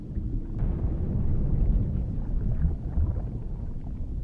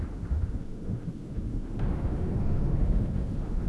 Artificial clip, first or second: second